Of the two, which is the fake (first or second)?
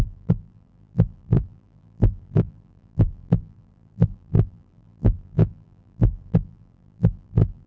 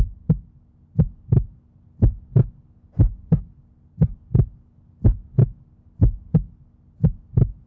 first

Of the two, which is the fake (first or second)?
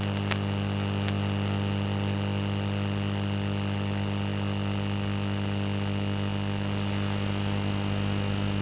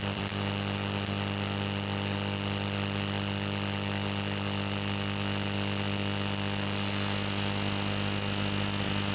second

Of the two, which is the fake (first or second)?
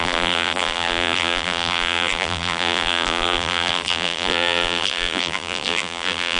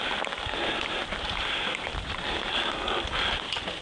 first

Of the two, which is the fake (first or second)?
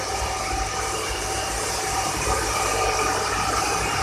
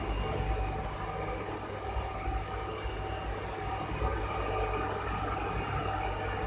first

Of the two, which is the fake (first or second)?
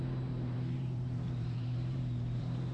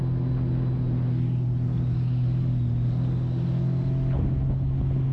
first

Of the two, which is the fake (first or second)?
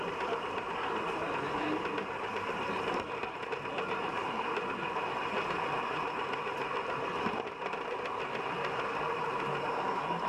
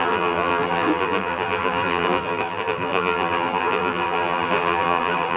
second